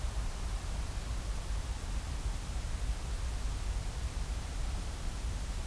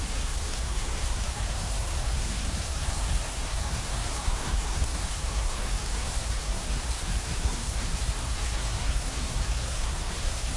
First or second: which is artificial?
second